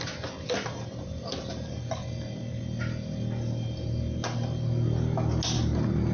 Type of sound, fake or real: real